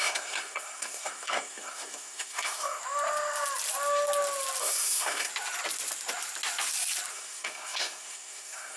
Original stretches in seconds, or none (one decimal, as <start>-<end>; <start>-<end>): 2.8-4.6; 5.3-7.1